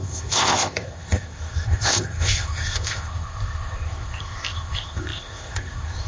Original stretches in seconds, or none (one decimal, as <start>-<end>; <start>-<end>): none